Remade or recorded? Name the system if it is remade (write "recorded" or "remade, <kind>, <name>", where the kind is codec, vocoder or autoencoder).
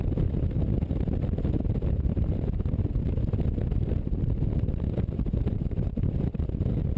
remade, vocoder, BigVGAN v2